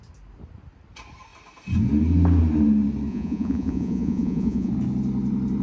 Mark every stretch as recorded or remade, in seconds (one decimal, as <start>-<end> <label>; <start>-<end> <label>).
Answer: 0.0-3.1 recorded; 3.1-4.7 remade; 4.7-5.6 recorded

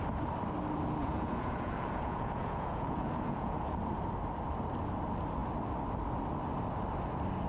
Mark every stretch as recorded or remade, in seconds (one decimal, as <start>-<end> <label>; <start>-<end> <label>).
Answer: 0.0-1.0 recorded; 1.0-3.8 remade; 3.8-7.5 recorded